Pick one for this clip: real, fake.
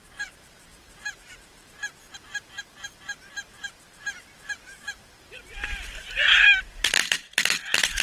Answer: fake